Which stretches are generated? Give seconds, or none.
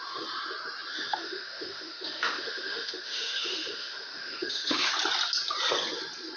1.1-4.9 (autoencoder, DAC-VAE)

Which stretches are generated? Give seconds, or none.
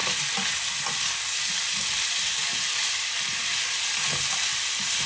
none